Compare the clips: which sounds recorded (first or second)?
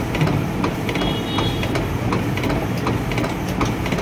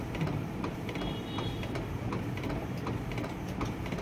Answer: first